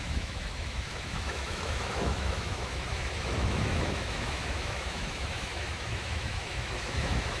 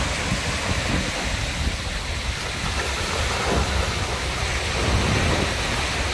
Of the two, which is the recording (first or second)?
second